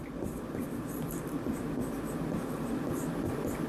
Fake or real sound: real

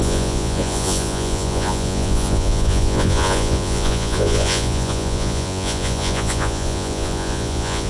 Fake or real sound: fake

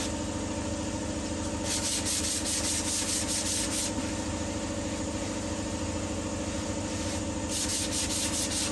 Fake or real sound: real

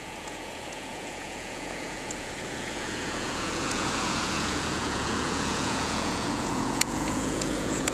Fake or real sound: fake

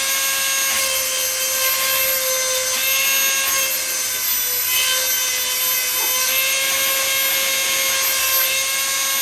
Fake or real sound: real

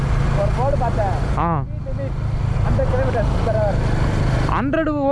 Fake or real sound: real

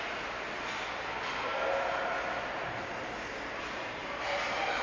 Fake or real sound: real